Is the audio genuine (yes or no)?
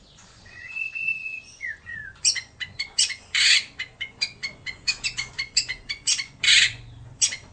no